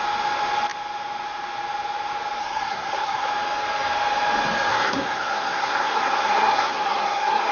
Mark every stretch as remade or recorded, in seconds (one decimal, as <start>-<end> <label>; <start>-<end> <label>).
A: 0.0-2.4 recorded; 2.4-3.3 remade; 3.3-4.7 recorded; 4.7-7.5 remade